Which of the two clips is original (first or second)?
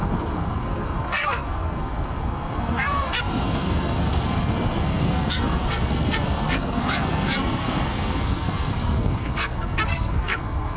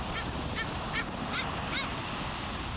second